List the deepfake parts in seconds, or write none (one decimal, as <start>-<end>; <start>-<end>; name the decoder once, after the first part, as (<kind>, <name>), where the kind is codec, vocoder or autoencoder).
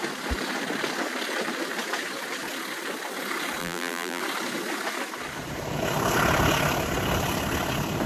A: 3.6-4.2 (vocoder, BigVGAN v2)